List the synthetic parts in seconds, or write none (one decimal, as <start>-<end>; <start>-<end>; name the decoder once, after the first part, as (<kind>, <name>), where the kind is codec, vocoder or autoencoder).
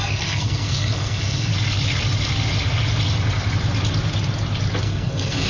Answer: 0.0-1.5 (codec, SNAC); 4.8-5.5